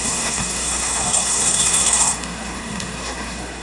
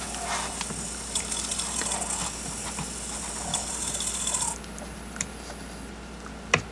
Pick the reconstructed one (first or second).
first